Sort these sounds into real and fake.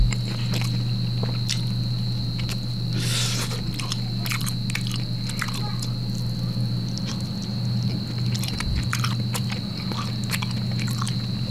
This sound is real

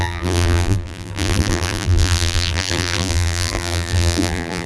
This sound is fake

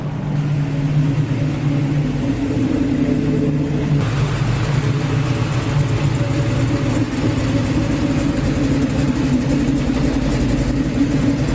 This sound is real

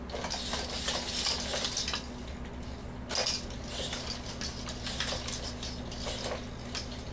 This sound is real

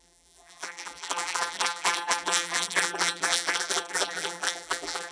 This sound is fake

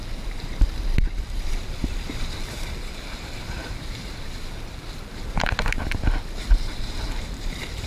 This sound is fake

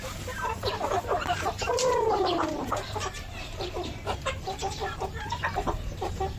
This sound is fake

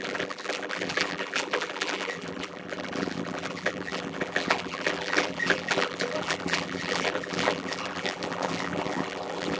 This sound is fake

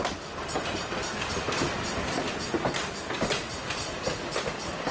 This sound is real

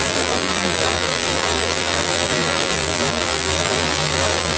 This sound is fake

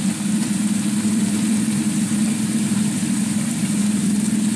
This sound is fake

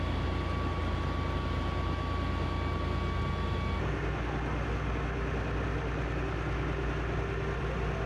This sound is real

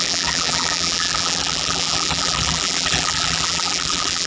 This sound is fake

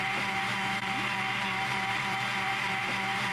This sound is fake